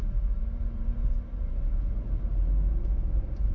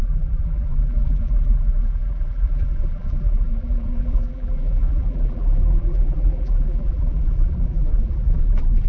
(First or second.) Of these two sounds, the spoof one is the second